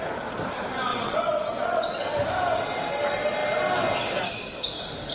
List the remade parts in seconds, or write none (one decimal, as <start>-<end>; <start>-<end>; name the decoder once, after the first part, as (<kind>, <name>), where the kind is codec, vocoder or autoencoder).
0.9-2.1 (vocoder, WaveNeXt)